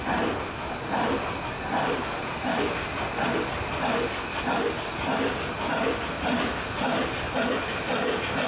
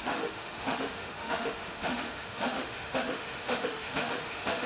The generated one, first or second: second